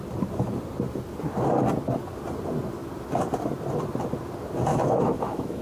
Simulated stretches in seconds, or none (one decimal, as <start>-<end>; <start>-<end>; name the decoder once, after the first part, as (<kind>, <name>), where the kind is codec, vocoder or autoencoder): 4.7-5.6 (autoencoder, DAC-VAE)